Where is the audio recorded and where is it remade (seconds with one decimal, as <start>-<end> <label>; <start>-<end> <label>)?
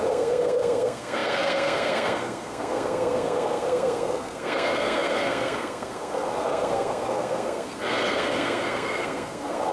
0.0-9.7 remade